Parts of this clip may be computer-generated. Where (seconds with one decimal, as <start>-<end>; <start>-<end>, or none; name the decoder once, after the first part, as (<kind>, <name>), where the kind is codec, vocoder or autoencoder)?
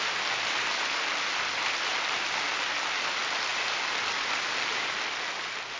none